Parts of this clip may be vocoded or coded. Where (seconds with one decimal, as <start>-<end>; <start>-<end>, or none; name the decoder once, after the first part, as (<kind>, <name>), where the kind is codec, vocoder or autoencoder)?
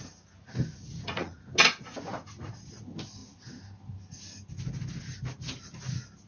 0.9-1.4 (vocoder, Vocos); 2.1-2.8